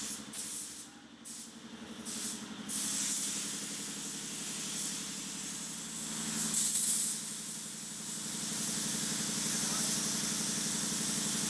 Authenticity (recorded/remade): recorded